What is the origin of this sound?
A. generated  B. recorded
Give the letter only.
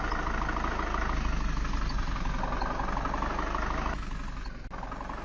B